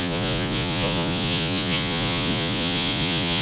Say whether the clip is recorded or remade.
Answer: remade